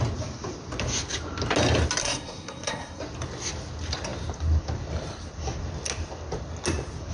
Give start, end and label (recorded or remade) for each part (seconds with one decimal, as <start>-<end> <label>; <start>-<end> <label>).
0.0-2.0 recorded; 2.0-3.0 remade; 3.0-7.1 recorded